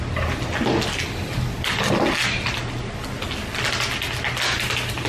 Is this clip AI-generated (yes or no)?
no